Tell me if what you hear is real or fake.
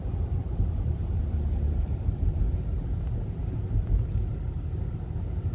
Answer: real